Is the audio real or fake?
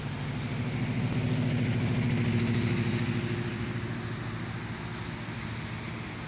real